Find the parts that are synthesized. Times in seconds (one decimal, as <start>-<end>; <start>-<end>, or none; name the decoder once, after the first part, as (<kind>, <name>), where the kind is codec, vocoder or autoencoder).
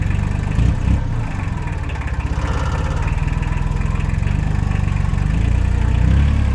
none